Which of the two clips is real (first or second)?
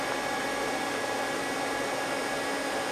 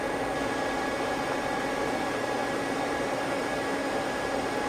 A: first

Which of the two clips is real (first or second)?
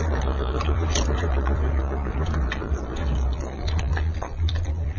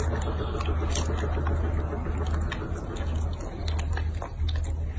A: second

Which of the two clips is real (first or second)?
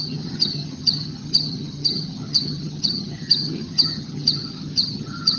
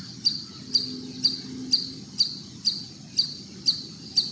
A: second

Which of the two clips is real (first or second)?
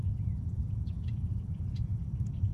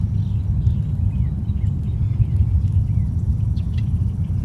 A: second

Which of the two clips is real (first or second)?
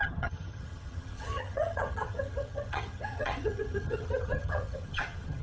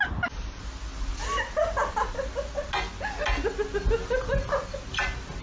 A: second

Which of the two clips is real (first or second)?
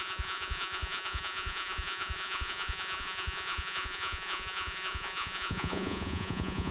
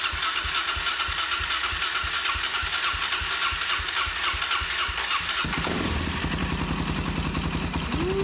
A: second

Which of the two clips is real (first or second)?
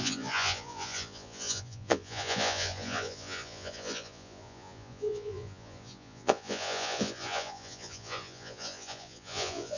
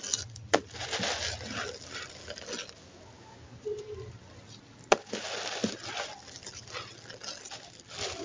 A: second